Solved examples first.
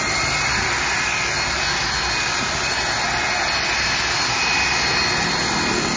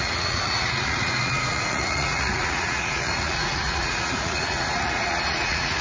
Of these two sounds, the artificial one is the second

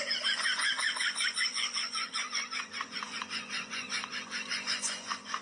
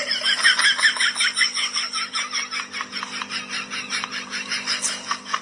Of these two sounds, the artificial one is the first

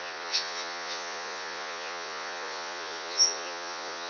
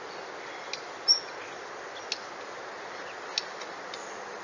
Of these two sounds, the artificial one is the first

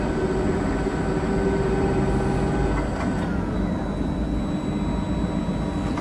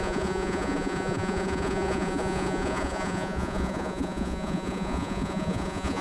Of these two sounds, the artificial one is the second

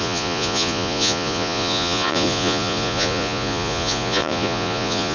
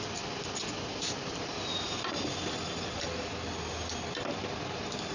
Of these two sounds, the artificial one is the first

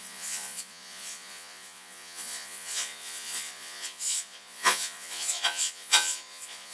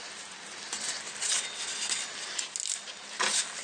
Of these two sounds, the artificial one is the first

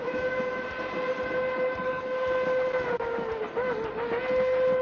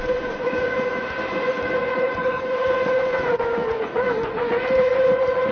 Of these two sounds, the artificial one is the second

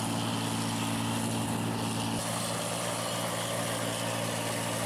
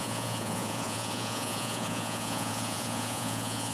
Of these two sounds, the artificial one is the second